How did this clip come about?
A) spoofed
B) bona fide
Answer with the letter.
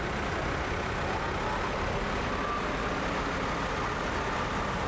B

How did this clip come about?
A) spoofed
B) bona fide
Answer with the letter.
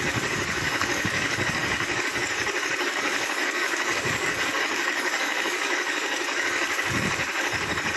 A